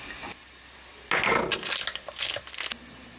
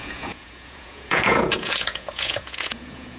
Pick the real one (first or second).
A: first